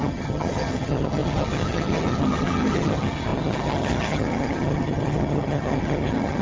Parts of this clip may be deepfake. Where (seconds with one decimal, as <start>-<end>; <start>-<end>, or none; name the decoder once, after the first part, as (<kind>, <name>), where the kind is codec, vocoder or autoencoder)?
0.0-6.4 (vocoder, HiFi-GAN)